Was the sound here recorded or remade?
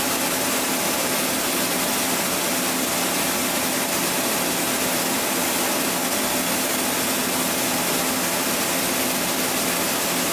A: recorded